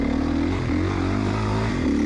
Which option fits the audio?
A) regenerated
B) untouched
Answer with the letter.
B